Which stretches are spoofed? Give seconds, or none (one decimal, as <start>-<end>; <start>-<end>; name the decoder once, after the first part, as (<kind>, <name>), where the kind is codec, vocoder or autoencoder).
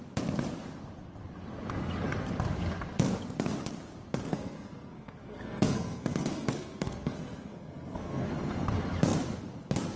4.3-8.3 (codec, SNAC)